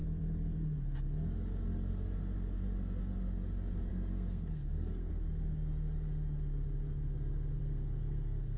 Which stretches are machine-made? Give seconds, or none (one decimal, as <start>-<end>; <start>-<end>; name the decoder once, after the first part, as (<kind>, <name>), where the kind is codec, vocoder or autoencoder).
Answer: 3.9-5.1 (codec, SNAC); 7.6-8.6